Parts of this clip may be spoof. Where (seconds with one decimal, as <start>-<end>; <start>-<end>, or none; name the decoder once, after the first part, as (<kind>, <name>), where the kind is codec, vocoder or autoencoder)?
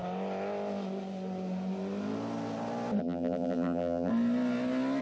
3.0-4.1 (vocoder, BigVGAN v2)